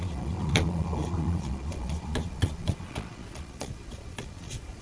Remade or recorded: remade